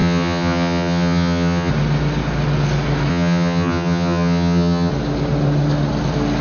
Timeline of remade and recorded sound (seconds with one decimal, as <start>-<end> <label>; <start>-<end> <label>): 0.0-1.7 remade; 1.7-3.1 recorded; 3.1-4.9 remade; 4.9-6.4 recorded